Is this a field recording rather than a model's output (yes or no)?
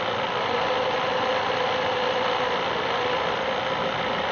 yes